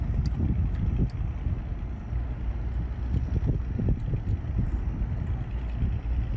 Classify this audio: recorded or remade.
recorded